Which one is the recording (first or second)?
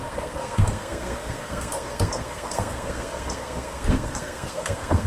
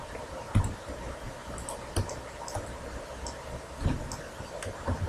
second